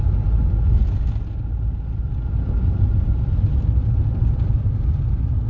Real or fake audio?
real